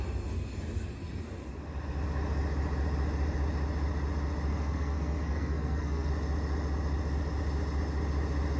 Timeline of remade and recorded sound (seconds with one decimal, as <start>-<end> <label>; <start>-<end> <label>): 0.0-4.5 recorded; 4.5-6.1 remade; 6.1-8.6 recorded